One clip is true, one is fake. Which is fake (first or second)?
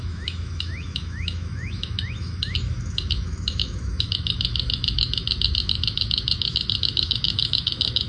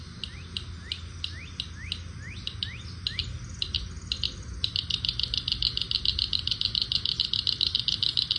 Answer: first